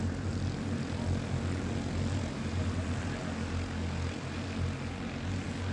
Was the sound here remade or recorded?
recorded